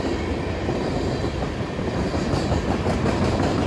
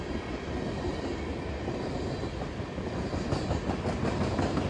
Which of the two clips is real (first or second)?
second